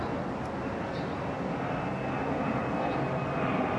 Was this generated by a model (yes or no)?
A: no